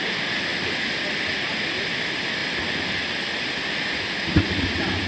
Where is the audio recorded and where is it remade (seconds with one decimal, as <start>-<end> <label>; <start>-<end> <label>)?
0.0-0.5 recorded; 0.5-1.2 remade; 1.2-5.1 recorded